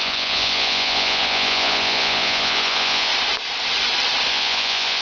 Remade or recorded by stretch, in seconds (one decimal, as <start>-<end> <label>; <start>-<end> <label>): 0.0-3.1 remade; 3.1-4.3 recorded; 4.3-5.0 remade